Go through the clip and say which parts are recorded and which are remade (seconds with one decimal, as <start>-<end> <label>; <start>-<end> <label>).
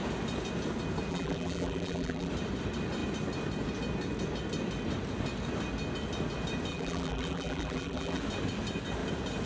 0.0-1.1 recorded; 1.1-2.3 remade; 2.3-6.7 recorded; 6.7-8.2 remade; 8.2-9.5 recorded